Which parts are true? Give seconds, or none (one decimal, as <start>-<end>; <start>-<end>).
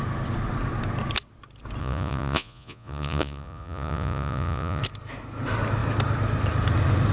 0.0-1.8; 4.8-7.1